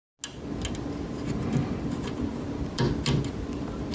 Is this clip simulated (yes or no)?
no